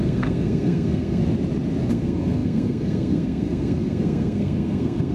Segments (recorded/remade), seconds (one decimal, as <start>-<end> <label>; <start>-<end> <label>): 0.0-1.2 remade; 1.2-1.9 recorded; 1.9-5.1 remade